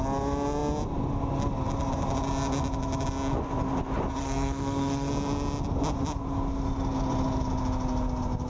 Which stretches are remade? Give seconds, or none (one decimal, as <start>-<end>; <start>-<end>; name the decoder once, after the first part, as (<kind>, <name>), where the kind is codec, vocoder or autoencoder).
4.2-5.1 (codec, SNAC)